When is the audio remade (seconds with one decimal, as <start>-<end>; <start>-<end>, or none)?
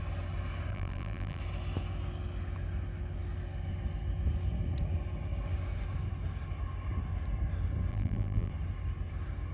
0.7-1.4; 7.9-8.5